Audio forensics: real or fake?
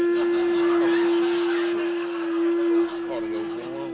real